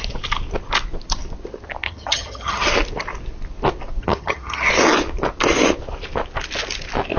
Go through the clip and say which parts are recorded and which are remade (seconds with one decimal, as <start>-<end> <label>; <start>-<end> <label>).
0.0-1.8 recorded; 1.8-2.7 remade; 2.7-4.0 recorded; 4.0-4.7 remade; 4.7-7.2 recorded

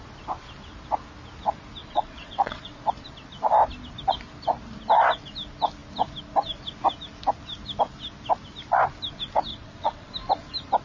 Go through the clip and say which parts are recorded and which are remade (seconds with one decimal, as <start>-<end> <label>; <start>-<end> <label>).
0.0-1.8 recorded; 1.8-2.8 remade; 2.8-9.5 recorded; 9.5-10.1 remade; 10.1-10.8 recorded

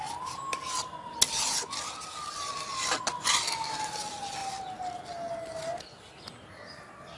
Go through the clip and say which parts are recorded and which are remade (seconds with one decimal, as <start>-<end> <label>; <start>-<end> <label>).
0.0-7.2 recorded

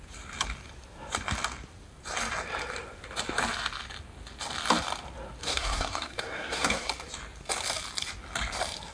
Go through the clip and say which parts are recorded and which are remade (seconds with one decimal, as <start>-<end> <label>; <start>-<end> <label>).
0.0-5.4 recorded; 5.4-6.9 remade; 6.9-8.9 recorded

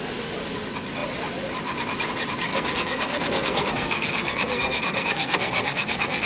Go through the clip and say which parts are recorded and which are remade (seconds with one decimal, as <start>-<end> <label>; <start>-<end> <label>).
0.0-2.5 recorded; 2.5-6.3 remade

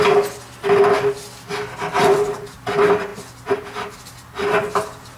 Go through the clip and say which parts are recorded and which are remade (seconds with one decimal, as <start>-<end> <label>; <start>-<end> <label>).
0.0-5.2 recorded

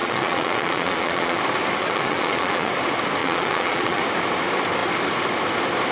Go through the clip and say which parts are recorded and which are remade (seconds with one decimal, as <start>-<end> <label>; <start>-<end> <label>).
0.0-1.4 remade; 1.4-1.8 recorded; 1.8-2.7 remade; 2.7-3.2 recorded; 3.2-4.0 remade; 4.0-5.9 recorded

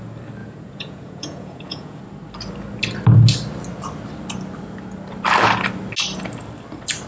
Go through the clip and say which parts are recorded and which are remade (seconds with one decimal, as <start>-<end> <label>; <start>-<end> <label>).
0.0-0.4 recorded; 0.4-2.0 remade; 2.0-7.1 recorded